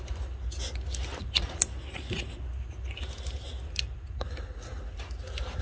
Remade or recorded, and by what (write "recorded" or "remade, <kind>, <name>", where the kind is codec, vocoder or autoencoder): recorded